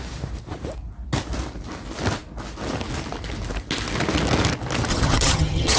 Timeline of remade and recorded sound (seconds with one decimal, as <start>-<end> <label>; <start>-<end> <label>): 0.0-4.9 recorded; 4.9-5.8 remade

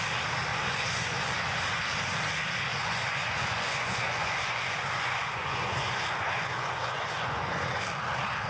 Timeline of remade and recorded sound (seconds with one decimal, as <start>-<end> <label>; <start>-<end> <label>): 0.0-0.5 recorded; 0.5-1.8 remade; 1.8-2.7 recorded; 2.7-7.8 remade; 7.8-8.5 recorded